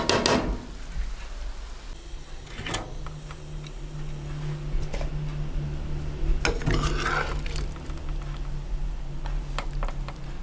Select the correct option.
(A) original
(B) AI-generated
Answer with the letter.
A